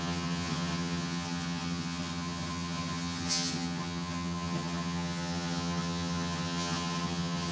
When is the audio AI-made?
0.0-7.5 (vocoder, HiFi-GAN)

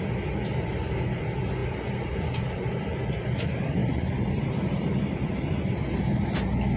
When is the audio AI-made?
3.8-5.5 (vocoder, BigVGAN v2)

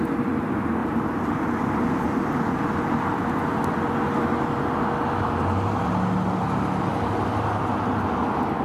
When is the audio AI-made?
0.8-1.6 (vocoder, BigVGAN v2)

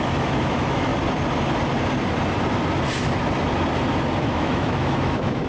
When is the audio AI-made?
0.0-0.9 (autoencoder, DAC-VAE); 4.2-5.5

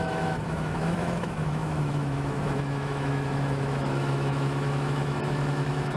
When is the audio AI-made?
0.0-6.0 (autoencoder, DAC-VAE)